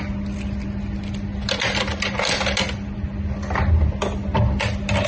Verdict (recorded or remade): recorded